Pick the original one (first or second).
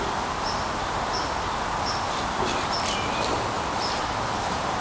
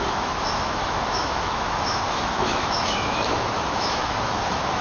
first